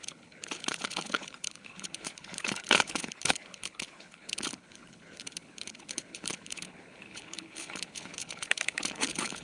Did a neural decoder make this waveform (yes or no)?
yes